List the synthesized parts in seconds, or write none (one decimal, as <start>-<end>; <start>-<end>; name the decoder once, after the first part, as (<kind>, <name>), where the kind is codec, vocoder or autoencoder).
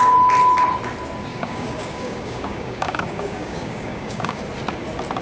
1.3-4.4 (codec, DAC)